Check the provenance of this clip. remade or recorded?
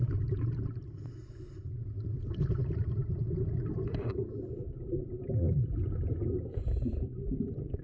remade